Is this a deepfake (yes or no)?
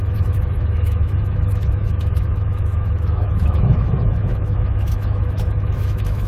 yes